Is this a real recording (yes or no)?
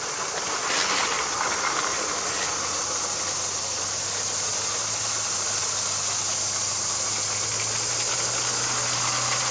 yes